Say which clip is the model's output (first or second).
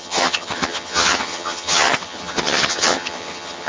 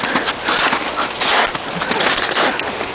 first